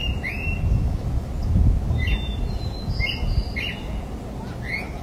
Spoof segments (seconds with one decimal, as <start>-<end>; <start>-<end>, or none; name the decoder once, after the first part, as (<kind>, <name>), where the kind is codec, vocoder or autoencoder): none